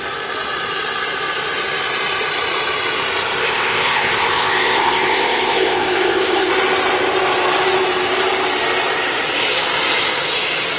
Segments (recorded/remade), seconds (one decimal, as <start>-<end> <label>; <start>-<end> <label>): 0.0-3.4 recorded; 3.4-6.5 remade; 6.5-10.8 recorded